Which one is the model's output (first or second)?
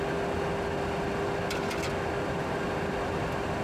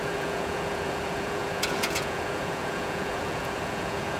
second